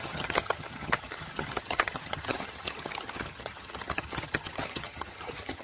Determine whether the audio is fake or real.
fake